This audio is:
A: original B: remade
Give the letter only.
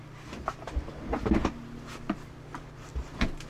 A